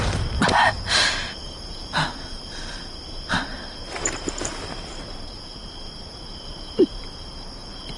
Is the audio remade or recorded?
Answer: remade